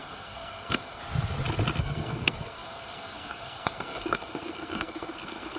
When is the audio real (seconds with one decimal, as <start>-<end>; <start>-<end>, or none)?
1.0-1.8